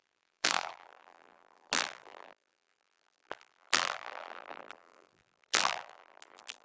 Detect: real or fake fake